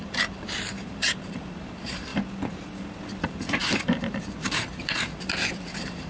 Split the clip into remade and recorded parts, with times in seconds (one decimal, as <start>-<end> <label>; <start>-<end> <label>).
0.0-2.1 remade; 2.1-3.2 recorded; 3.2-6.1 remade